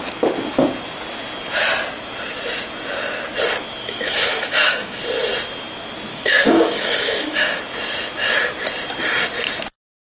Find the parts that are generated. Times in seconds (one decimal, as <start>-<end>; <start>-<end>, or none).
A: 3.8-5.0; 6.1-7.6